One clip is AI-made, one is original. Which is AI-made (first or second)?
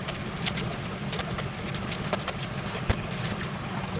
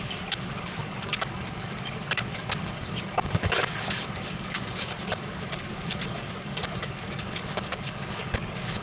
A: second